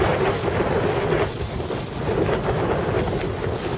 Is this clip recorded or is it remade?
recorded